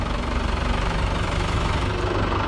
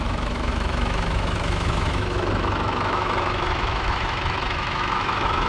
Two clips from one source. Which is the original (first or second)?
first